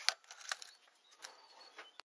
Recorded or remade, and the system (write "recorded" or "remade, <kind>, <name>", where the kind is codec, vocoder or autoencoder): recorded